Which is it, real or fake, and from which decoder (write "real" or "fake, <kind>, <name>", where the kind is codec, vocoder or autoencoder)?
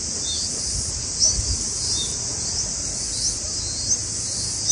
real